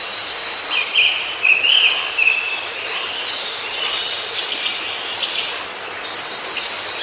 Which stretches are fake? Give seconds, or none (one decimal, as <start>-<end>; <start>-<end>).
none